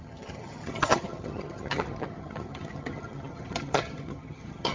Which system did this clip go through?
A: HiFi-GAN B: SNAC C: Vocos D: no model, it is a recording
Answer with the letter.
A